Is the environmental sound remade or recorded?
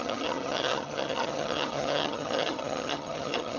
remade